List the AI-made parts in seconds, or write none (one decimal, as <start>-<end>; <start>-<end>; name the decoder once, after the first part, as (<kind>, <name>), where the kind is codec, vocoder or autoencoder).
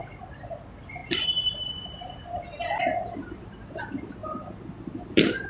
1.0-3.8 (vocoder, BigVGAN v2); 4.2-5.5